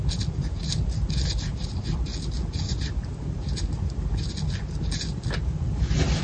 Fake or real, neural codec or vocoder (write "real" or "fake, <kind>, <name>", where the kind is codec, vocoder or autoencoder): real